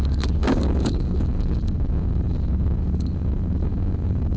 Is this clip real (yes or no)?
no